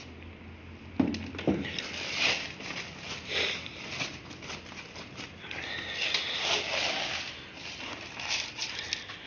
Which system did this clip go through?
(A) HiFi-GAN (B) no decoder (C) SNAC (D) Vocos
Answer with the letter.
B